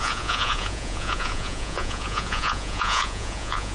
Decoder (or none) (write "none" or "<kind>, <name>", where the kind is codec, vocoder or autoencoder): vocoder, Vocos